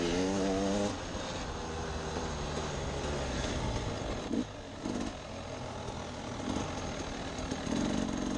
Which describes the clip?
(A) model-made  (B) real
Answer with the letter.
B